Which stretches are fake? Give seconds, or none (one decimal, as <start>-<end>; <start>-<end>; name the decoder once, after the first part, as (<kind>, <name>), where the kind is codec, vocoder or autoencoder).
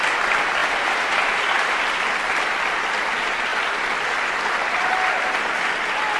0.6-1.8 (vocoder, BigVGAN v2)